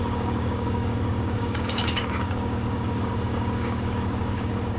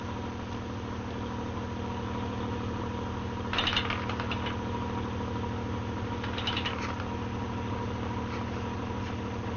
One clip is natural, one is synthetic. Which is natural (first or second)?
second